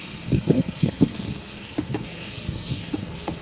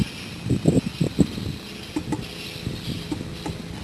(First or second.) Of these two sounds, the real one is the second